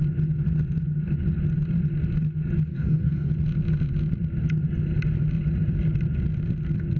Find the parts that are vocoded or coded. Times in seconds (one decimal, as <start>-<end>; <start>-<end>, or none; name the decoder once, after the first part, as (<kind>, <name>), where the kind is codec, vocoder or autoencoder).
2.7-3.3 (codec, DAC)